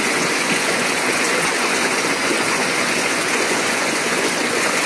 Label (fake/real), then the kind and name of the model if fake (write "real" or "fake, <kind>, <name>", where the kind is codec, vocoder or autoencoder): fake, vocoder, Vocos